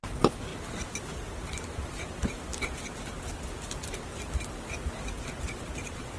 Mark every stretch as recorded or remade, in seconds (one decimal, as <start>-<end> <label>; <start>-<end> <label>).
0.0-6.2 recorded